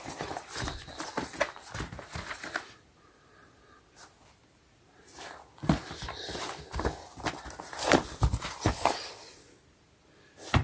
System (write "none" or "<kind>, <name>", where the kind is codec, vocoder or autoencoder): none